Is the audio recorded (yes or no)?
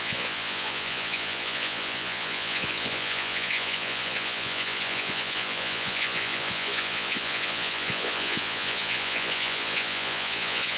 no